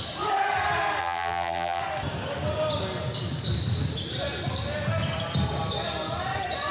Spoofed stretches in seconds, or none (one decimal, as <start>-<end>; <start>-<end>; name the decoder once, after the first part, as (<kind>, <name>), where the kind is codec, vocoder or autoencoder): 1.0-1.8 (vocoder, BigVGAN v2)